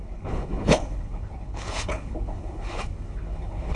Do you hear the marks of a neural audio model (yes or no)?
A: yes